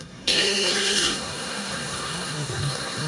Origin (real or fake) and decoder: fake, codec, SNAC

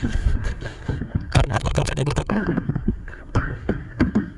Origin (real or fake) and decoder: fake, codec, SNAC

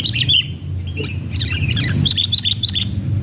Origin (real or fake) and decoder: fake, vocoder, BigVGAN v2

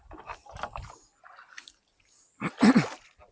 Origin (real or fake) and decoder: real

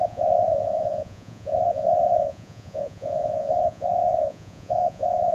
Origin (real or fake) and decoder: fake, vocoder, Vocos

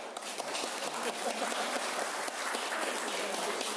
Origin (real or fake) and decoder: real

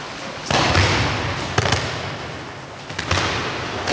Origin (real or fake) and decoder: real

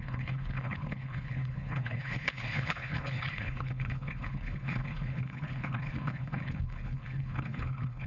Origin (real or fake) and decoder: fake, codec, HILCodec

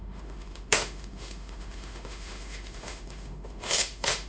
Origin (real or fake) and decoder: fake, autoencoder, DAC-VAE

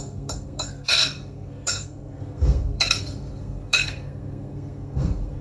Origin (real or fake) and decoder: fake, codec, SNAC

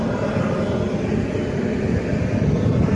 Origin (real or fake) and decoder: real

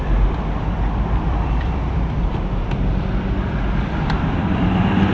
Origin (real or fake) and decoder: fake, vocoder, BigVGAN v2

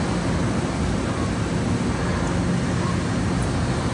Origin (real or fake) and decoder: real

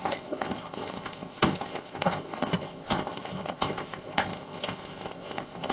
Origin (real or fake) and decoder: fake, codec, ZipCodec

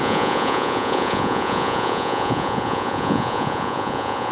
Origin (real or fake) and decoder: fake, vocoder, Vocos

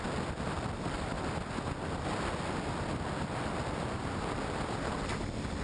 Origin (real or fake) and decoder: real